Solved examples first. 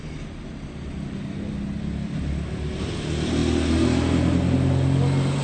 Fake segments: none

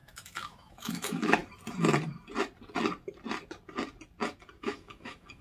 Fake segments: 0.0-1.4; 4.6-5.4